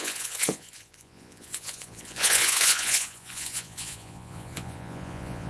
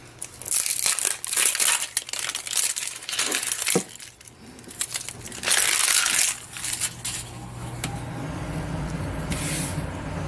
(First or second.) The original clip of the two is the second